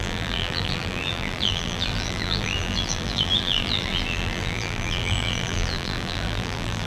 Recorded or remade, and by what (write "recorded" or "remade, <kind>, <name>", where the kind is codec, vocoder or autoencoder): remade, vocoder, BigVGAN v2